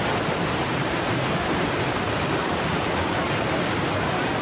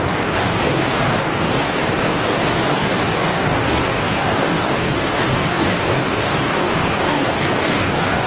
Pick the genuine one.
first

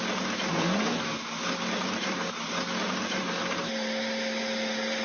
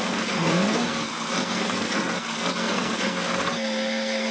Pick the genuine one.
first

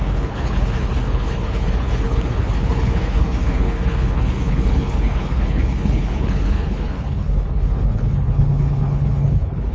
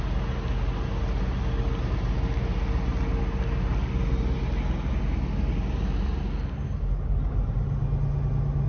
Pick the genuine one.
second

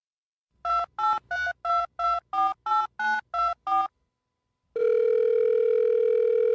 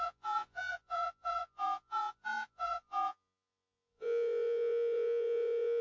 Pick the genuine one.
first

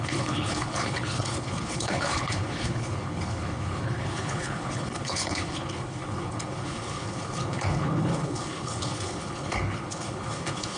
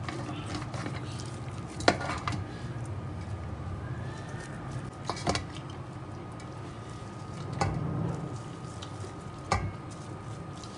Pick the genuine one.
second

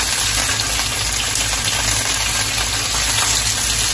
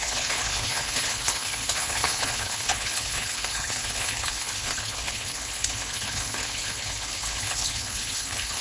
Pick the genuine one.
first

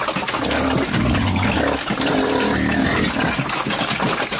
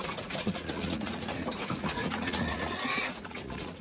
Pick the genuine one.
first